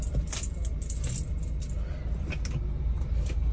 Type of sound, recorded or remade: recorded